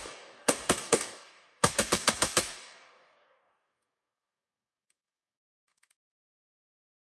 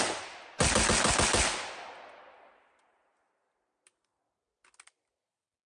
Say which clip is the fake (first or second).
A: first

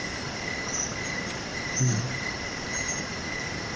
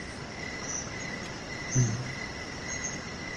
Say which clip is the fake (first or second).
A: first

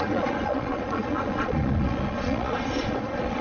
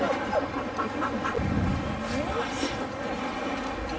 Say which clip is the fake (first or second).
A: first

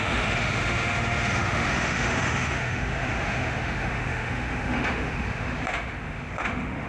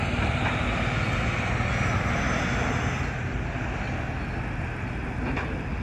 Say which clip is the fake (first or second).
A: first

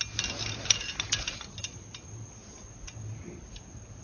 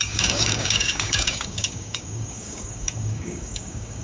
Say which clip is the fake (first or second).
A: second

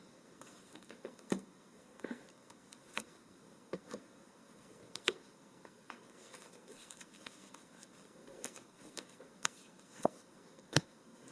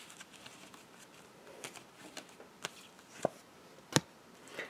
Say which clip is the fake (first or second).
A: first